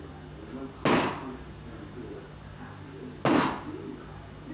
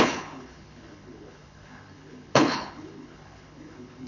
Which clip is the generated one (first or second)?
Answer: second